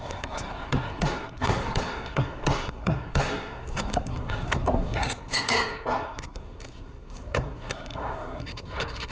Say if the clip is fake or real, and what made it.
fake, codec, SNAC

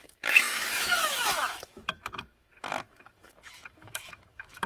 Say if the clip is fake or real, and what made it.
fake, autoencoder, DAC-VAE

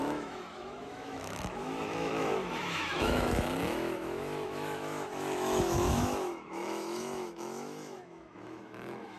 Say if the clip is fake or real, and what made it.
fake, autoencoder, DAC-VAE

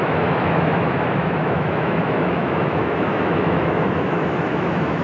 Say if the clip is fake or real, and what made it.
fake, autoencoder, DAC-VAE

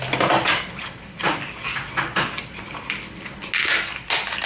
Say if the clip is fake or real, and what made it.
real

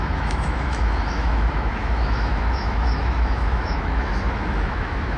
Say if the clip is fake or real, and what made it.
fake, autoencoder, DAC-VAE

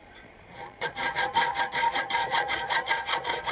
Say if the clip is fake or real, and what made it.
fake, vocoder, Vocos